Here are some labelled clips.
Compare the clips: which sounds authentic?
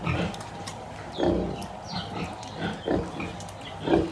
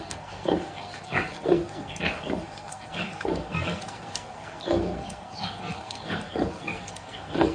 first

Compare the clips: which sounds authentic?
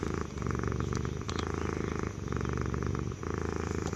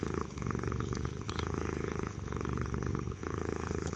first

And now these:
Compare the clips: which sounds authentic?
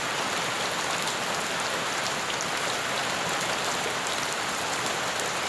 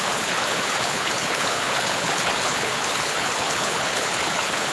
first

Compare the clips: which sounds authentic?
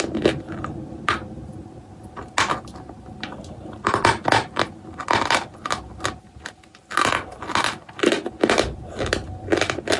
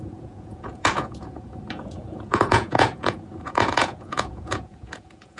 first